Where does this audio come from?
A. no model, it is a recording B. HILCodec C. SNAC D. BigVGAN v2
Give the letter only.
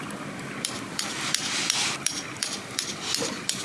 D